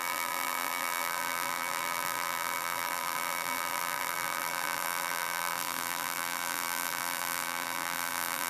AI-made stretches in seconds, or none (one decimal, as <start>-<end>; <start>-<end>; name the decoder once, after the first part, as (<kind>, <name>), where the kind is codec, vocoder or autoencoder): 0.0-8.5 (vocoder, BigVGAN v2)